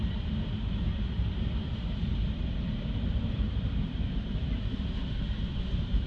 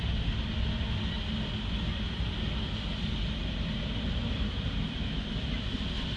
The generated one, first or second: first